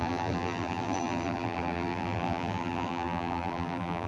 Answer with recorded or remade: remade